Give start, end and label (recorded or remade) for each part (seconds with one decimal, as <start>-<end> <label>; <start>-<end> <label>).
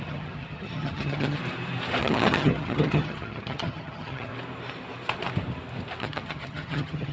0.0-1.4 remade; 1.4-2.0 recorded; 2.0-4.3 remade; 4.3-6.0 recorded; 6.0-7.1 remade